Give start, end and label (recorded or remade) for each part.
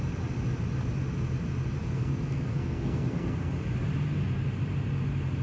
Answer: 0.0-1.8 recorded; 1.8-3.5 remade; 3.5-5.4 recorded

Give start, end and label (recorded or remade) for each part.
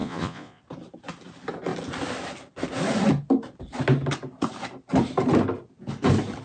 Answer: 0.0-0.6 remade; 0.6-6.4 recorded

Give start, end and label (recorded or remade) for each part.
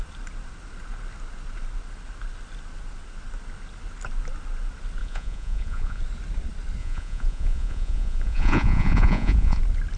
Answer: 0.0-5.0 recorded; 5.0-6.0 remade; 6.0-6.8 recorded; 6.8-9.6 remade; 9.6-10.0 recorded